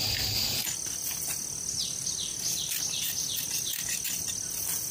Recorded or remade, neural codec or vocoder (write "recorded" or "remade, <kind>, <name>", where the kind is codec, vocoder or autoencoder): recorded